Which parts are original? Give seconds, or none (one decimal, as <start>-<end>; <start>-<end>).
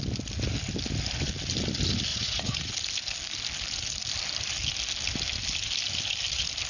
0.0-2.1; 2.7-6.7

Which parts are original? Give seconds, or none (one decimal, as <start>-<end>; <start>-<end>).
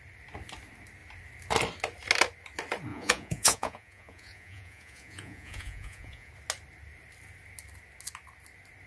0.0-2.9; 6.3-8.9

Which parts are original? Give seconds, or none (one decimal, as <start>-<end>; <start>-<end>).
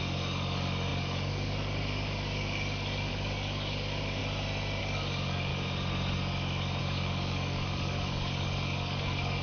4.2-4.8; 5.5-6.8